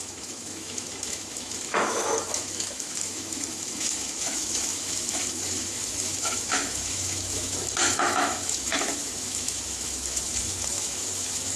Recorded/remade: remade